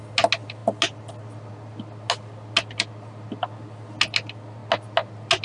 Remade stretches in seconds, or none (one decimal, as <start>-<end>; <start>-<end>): none